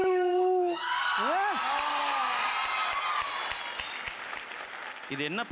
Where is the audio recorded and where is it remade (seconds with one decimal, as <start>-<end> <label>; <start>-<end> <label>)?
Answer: 0.0-1.0 remade; 1.0-2.0 recorded; 2.0-2.5 remade; 2.5-5.5 recorded

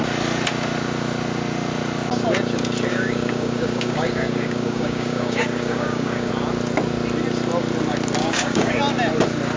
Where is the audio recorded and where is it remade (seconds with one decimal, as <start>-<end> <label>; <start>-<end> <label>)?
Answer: 0.0-2.9 recorded; 2.9-6.3 remade; 6.3-8.2 recorded; 8.2-8.8 remade; 8.8-9.6 recorded

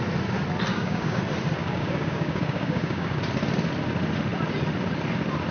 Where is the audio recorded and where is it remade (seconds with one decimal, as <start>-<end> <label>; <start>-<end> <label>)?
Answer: 0.0-0.7 recorded; 0.7-1.2 remade; 1.2-1.6 recorded; 1.6-3.2 remade; 3.2-5.5 recorded

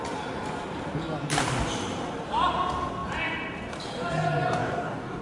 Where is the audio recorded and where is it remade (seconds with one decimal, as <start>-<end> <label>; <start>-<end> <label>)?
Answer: 0.0-4.6 recorded; 4.6-5.2 remade

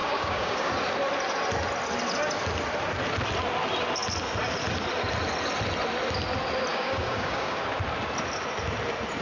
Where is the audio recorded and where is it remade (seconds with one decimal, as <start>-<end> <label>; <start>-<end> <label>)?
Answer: 0.0-0.7 remade; 0.7-6.7 recorded; 6.7-7.6 remade; 7.6-9.2 recorded

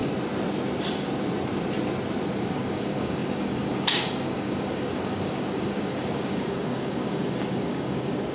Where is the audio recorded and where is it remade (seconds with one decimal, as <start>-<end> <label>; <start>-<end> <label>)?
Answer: 0.0-2.4 recorded; 2.4-8.3 remade